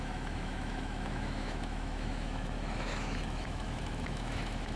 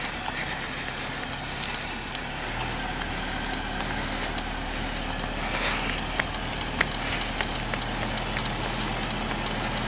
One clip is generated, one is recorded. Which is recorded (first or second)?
second